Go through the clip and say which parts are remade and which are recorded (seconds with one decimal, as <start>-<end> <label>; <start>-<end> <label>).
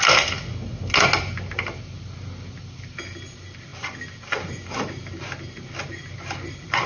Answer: 0.0-6.9 recorded